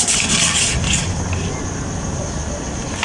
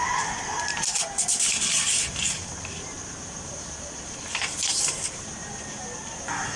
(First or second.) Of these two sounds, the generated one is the second